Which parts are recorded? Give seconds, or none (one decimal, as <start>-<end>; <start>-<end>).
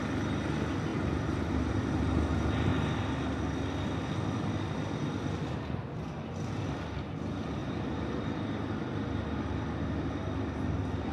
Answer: 0.0-0.9; 1.4-7.6; 8.7-11.1